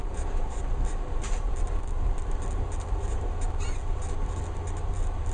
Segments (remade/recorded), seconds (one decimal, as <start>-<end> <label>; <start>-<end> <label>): 0.0-1.6 remade; 1.6-4.8 recorded; 4.8-5.3 remade